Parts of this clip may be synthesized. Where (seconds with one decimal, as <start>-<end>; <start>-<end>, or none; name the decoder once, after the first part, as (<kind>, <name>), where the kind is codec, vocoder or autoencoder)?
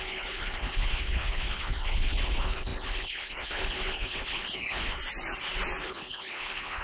0.0-5.0 (codec, HILCodec); 5.8-6.8